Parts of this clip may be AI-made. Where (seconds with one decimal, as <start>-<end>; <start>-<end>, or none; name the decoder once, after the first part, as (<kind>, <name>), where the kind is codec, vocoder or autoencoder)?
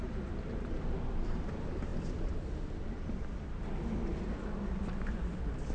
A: none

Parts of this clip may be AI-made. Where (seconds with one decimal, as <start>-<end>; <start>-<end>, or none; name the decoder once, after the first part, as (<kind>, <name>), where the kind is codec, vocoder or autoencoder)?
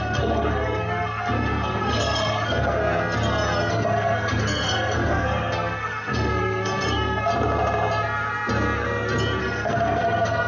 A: 0.0-2.8 (codec, SNAC); 3.7-7.3; 9.4-10.5